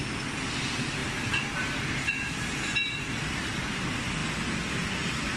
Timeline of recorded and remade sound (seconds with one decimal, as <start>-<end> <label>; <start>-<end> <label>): 0.0-5.4 recorded